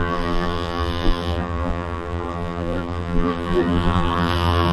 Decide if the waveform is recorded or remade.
remade